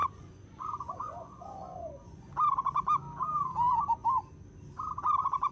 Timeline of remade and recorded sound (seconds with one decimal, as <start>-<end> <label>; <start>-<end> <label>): 0.0-2.3 remade; 2.3-5.5 recorded